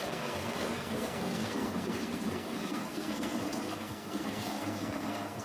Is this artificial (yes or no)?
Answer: yes